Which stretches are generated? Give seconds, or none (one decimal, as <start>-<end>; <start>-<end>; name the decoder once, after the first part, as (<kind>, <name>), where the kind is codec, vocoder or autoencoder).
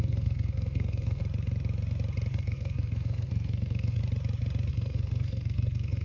0.0-1.2 (codec, SNAC); 2.3-4.0; 4.7-6.0